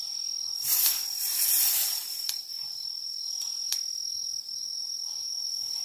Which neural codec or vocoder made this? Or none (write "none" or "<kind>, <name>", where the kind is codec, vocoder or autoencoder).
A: none